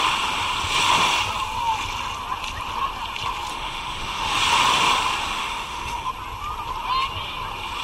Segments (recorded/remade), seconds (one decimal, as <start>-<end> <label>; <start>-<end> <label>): 0.0-3.5 recorded; 3.5-4.4 remade; 4.4-5.2 recorded; 5.2-6.1 remade; 6.1-7.8 recorded